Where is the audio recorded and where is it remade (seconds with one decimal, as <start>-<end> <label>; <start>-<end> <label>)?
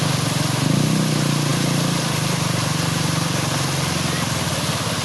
0.0-5.0 recorded